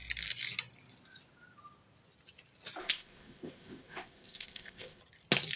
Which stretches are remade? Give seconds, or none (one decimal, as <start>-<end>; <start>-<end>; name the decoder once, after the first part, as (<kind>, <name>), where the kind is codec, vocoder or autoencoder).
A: 2.8-5.0 (codec, ZipCodec)